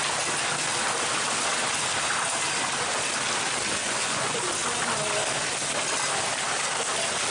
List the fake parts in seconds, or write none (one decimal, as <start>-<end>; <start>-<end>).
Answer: 3.8-4.4